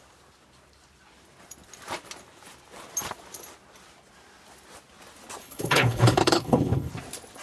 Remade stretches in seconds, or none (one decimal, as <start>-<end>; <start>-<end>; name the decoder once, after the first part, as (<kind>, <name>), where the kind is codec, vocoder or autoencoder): 5.4-6.9 (codec, HILCodec)